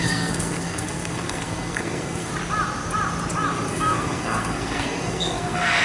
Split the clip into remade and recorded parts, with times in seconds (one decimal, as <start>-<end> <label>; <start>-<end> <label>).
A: 0.0-2.3 remade; 2.3-3.7 recorded; 3.7-5.8 remade